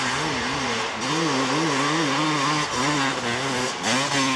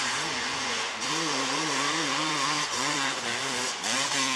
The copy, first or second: second